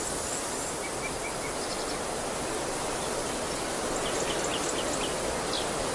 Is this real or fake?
real